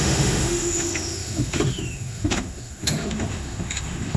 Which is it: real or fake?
fake